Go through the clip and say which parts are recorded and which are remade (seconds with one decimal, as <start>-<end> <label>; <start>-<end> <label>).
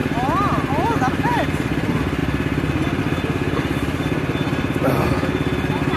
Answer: 0.0-6.0 recorded